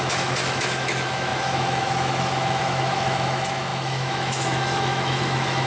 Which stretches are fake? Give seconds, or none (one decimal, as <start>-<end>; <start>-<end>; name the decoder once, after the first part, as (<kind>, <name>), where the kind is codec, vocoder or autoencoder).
0.0-5.7 (autoencoder, DAC-VAE)